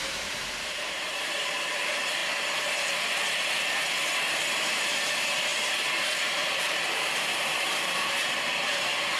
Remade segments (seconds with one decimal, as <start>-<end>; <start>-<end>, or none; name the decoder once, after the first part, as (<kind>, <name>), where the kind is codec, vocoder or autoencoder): 0.0-2.2 (vocoder, BigVGAN v2); 4.6-9.2